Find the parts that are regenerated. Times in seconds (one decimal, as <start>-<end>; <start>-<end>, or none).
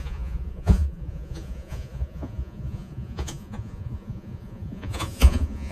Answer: 0.0-5.7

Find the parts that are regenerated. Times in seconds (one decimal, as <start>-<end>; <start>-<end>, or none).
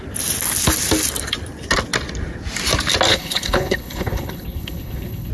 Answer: 3.1-5.3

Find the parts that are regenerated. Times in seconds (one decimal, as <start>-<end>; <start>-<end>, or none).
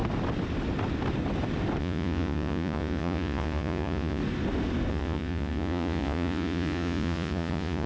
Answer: 1.8-4.2; 4.9-7.9